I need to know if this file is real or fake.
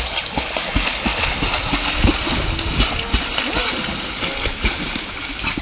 real